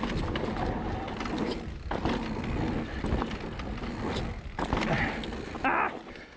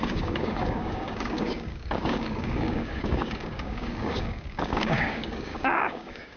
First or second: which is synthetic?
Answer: second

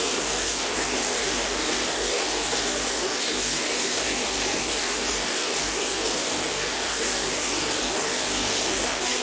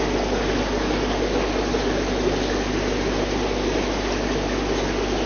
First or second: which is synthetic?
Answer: first